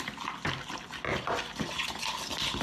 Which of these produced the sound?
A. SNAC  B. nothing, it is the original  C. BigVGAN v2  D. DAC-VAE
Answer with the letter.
B